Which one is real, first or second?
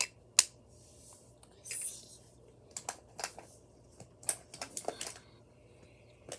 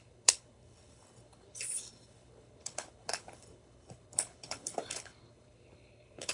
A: first